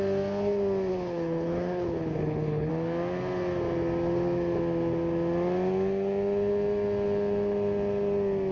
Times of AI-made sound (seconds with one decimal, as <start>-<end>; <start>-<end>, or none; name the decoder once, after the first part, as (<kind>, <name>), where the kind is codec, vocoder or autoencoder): 0.9-2.7 (codec, HILCodec)